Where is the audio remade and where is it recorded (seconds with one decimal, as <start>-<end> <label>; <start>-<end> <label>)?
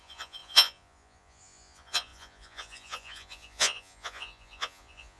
0.0-5.2 remade